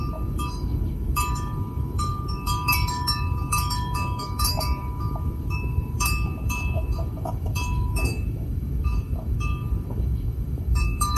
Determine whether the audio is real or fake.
fake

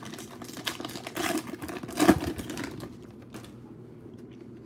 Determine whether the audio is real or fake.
real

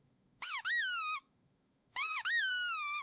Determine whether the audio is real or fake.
fake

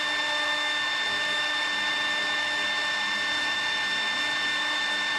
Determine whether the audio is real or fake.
real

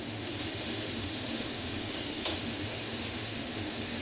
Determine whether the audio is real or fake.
fake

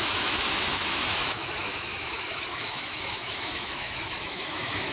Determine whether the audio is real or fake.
fake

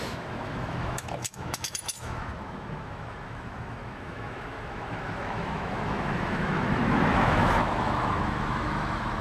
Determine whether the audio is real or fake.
fake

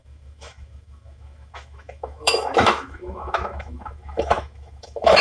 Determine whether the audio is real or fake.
fake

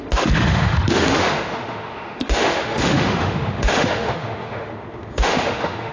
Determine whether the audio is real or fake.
fake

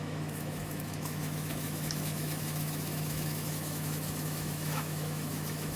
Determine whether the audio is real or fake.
fake